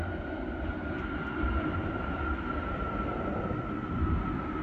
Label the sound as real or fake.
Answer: real